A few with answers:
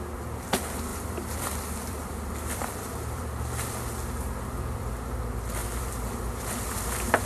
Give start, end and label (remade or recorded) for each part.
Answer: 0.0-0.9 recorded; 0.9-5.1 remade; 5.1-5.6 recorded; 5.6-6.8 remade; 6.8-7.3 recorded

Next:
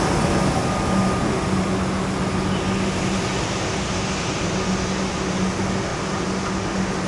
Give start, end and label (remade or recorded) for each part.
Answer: 0.0-7.1 recorded